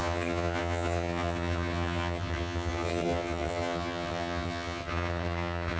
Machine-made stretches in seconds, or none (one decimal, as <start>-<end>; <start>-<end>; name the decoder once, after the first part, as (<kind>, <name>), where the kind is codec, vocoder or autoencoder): 0.0-5.8 (vocoder, HiFi-GAN)